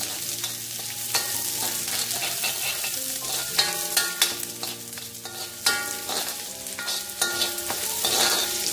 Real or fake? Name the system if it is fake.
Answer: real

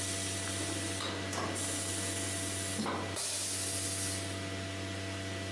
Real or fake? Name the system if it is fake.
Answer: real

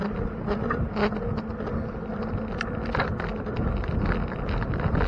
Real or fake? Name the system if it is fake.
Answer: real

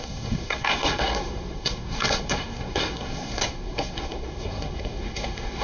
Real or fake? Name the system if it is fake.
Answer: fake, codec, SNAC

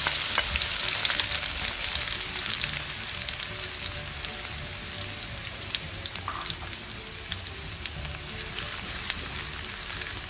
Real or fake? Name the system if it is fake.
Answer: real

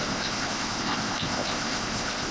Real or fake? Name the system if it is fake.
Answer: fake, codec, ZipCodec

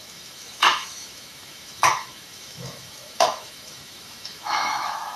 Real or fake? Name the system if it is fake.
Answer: fake, autoencoder, DAC-VAE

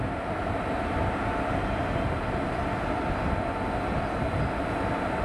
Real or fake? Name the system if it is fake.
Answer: real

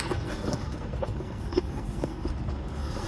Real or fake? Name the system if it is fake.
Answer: fake, codec, SNAC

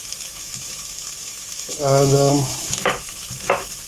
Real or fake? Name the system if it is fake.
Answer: fake, autoencoder, DAC-VAE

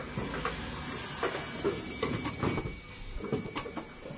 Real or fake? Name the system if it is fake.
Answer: real